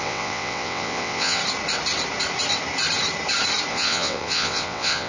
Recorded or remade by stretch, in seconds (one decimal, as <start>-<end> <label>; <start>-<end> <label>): 0.0-1.4 remade; 1.4-3.7 recorded; 3.7-5.1 remade